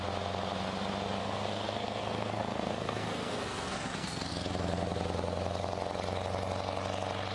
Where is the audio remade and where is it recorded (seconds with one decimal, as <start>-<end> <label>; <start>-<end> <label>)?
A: 0.0-1.2 recorded; 1.2-4.3 remade; 4.3-7.3 recorded